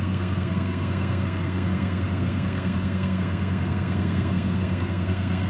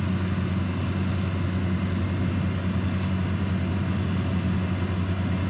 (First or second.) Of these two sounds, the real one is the second